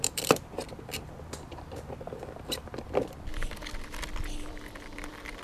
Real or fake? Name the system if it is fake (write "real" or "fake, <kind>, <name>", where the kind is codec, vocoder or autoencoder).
fake, vocoder, BigVGAN v2